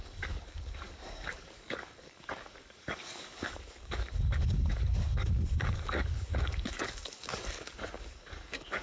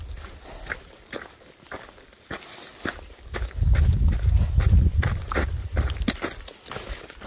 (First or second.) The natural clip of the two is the second